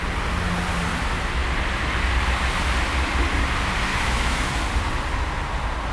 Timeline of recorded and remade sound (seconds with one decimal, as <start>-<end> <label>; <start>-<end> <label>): 0.0-3.9 recorded; 3.9-4.5 remade; 4.5-5.9 recorded